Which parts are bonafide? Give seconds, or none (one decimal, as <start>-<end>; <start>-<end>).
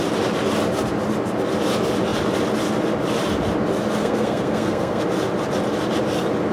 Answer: 0.0-4.0; 5.0-6.5